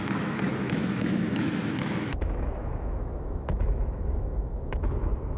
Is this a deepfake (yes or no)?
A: yes